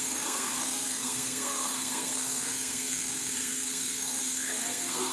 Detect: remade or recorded remade